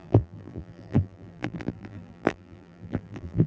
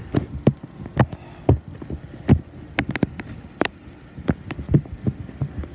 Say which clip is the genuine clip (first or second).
second